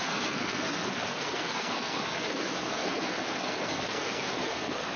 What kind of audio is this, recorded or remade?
remade